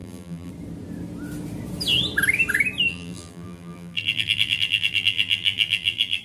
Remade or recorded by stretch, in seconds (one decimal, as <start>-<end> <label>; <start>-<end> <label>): 0.0-0.5 remade; 0.5-2.9 recorded; 2.9-6.2 remade